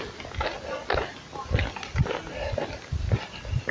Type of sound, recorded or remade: recorded